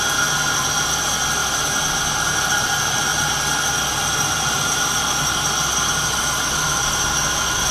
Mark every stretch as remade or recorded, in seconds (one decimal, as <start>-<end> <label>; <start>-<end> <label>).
0.0-7.7 recorded